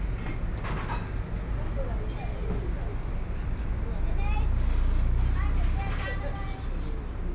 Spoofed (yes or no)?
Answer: no